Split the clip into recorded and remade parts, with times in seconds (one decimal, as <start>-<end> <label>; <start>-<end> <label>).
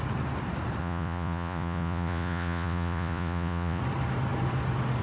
0.0-0.8 recorded; 0.8-3.8 remade; 3.8-5.0 recorded